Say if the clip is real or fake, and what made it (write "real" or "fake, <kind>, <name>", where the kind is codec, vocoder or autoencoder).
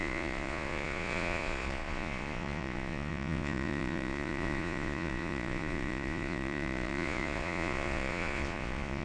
fake, vocoder, Vocos